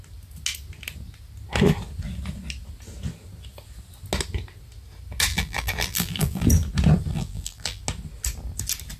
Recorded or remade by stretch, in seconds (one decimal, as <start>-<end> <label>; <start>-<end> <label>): 0.0-5.3 recorded; 5.3-6.5 remade; 6.5-7.1 recorded; 7.1-7.8 remade; 7.8-9.0 recorded

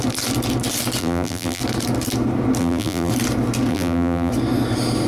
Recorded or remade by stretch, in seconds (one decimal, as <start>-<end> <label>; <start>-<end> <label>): 0.0-1.0 recorded; 1.0-1.6 remade; 1.6-2.6 recorded; 2.6-3.1 remade; 3.1-3.7 recorded; 3.7-4.3 remade; 4.3-5.1 recorded

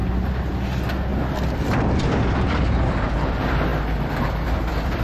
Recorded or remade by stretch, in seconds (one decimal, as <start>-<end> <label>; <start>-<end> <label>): 0.0-0.5 recorded; 0.5-1.1 remade; 1.1-2.0 recorded; 2.0-5.0 remade

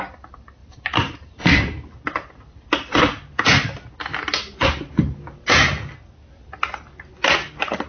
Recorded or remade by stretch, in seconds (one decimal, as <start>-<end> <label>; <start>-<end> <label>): 0.0-0.6 recorded; 0.6-1.5 remade; 1.5-7.9 recorded

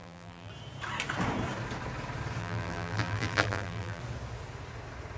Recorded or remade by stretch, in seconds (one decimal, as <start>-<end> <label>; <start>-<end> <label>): 0.0-0.5 remade; 0.5-2.4 recorded; 2.4-4.0 remade; 4.0-5.2 recorded

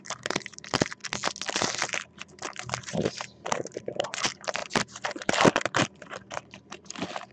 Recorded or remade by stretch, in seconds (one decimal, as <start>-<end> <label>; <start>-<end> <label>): 0.0-1.0 remade; 1.0-2.8 recorded; 2.8-7.3 remade